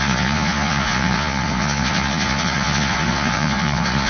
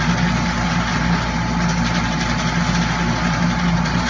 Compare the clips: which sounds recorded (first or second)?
second